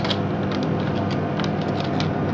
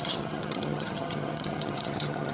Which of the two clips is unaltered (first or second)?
first